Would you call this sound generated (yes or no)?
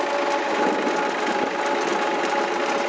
no